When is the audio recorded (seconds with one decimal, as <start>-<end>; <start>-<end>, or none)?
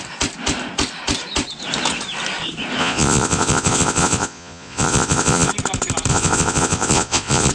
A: 0.0-2.8; 5.5-6.1